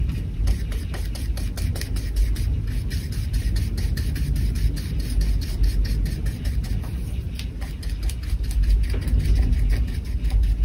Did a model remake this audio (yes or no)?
no